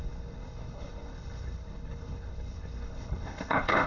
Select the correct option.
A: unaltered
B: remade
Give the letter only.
B